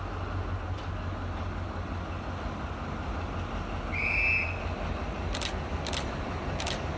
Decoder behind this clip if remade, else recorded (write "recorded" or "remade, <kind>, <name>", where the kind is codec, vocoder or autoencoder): recorded